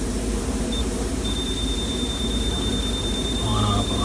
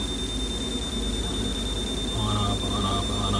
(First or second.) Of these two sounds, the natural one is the second